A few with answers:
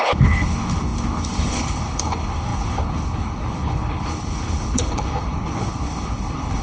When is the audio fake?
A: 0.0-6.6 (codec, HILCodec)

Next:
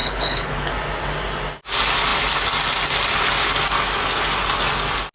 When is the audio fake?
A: 0.0-0.7 (codec, HILCodec)

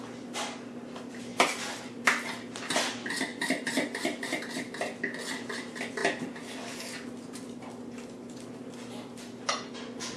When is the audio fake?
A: none

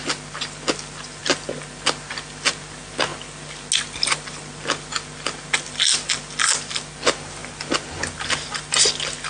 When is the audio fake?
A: none

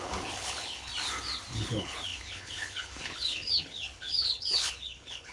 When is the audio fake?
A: 0.0-0.9 (codec, HILCodec); 1.5-5.3

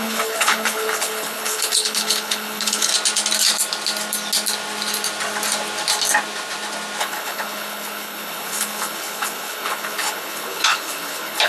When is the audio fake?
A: 0.0-2.9 (codec, HILCodec); 7.0-11.5

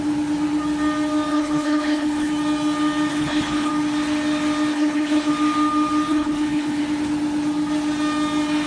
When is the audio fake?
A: 1.3-2.3 (codec, HILCodec); 3.1-3.7; 4.7-5.3; 6.1-6.8

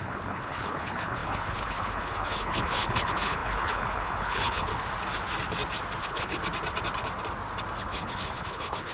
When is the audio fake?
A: 0.0-4.7 (codec, HILCodec); 6.0-6.4; 7.8-8.9